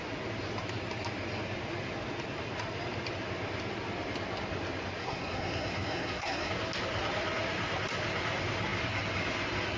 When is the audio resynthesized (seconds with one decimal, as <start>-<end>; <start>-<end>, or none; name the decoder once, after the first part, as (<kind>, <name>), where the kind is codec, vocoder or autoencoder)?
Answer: 5.0-6.5 (codec, SNAC)